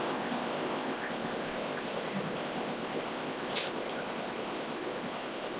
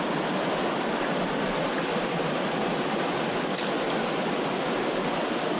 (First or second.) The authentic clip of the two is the second